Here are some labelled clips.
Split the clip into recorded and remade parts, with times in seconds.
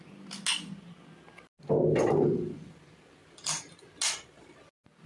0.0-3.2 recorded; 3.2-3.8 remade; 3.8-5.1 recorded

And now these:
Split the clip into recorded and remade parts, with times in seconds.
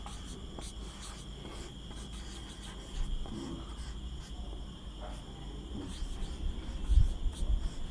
0.0-7.9 recorded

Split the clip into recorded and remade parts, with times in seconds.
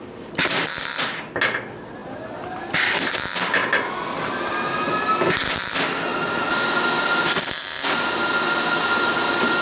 0.0-6.1 recorded; 6.1-7.1 remade; 7.1-9.6 recorded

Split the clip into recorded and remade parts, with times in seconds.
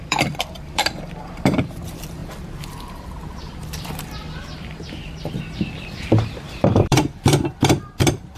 0.0-2.2 remade; 2.2-2.9 recorded; 2.9-4.2 remade; 4.2-5.0 recorded; 5.0-8.4 remade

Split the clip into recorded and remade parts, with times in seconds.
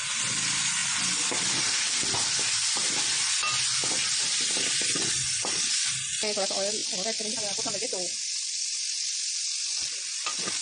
0.0-10.6 recorded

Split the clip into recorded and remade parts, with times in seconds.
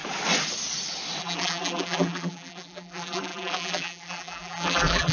0.0-1.2 recorded; 1.2-5.1 remade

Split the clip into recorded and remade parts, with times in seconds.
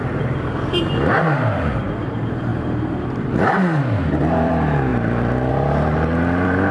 0.0-4.9 remade; 4.9-5.5 recorded; 5.5-6.7 remade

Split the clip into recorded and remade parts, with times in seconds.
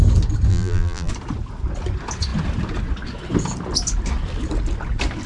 0.0-0.5 recorded; 0.5-1.1 remade; 1.1-5.3 recorded